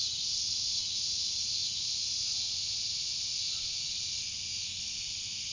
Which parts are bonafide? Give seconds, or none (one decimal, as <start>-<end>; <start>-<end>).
1.6-3.5